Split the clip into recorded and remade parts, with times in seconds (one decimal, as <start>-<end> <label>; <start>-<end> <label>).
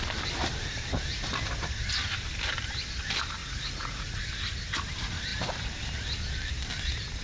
0.0-3.4 recorded; 3.4-4.2 remade; 4.2-7.2 recorded